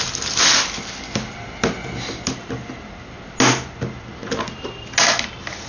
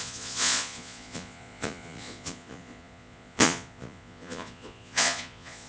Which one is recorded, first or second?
first